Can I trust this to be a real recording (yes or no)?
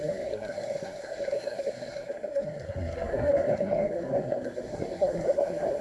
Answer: no